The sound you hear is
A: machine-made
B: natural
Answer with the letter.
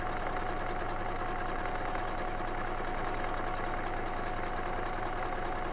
B